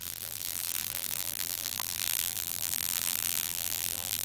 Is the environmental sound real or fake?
fake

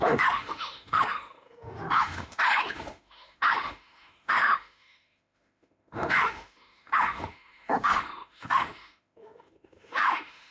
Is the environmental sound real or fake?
fake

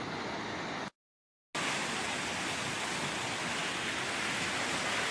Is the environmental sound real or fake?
real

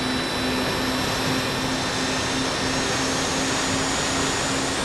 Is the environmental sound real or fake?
real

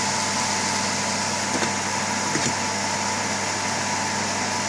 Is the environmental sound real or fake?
real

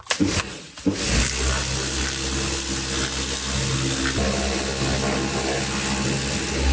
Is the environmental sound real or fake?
real